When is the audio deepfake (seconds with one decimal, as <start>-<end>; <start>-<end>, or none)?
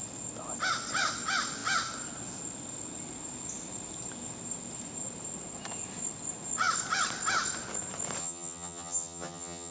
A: 8.2-9.7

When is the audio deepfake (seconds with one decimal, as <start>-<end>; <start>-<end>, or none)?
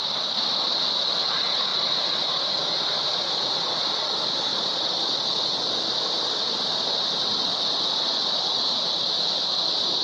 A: none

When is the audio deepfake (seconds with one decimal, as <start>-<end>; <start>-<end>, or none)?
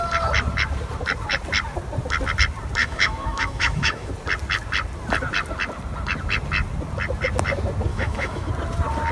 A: 2.8-4.1; 7.9-8.5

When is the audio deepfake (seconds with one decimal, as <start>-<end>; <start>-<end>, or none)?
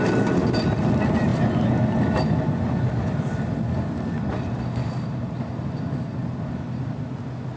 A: none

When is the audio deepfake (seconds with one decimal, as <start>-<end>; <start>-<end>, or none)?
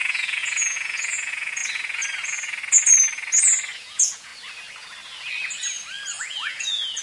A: 0.0-1.6; 3.8-4.3; 6.2-7.0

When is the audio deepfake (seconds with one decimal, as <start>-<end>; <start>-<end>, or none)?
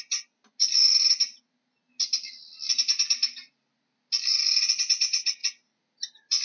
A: none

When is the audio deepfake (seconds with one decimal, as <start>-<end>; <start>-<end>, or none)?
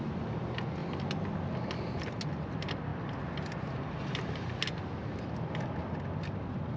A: none